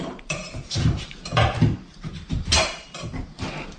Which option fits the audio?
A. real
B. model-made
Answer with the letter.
B